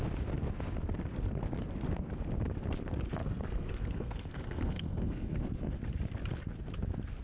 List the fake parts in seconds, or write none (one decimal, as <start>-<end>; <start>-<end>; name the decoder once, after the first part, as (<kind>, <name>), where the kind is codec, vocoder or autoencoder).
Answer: 3.2-5.8 (codec, SNAC)